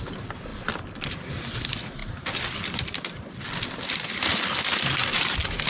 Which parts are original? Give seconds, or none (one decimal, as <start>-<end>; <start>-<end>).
0.0-0.5; 1.1-2.0